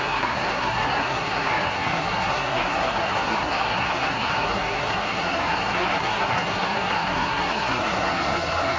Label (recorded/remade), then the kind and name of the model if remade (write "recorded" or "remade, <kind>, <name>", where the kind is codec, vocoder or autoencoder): remade, codec, SNAC